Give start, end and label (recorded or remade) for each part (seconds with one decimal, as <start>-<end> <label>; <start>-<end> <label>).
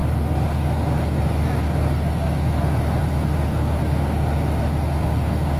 0.0-5.6 recorded